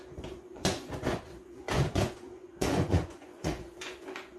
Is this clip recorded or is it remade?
remade